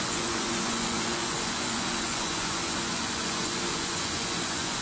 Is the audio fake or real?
fake